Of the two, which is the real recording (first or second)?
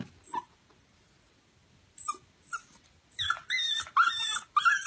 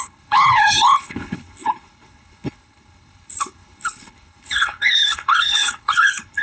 first